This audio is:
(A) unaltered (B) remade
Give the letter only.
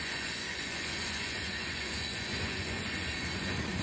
B